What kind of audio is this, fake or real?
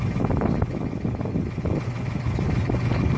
real